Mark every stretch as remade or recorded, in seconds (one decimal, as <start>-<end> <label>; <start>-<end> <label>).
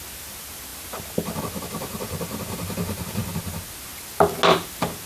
0.0-5.1 recorded